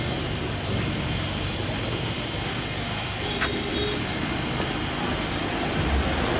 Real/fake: real